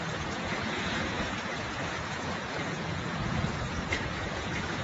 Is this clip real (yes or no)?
no